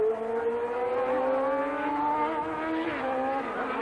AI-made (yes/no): no